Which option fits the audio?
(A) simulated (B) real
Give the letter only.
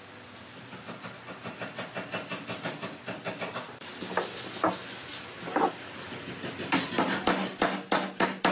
B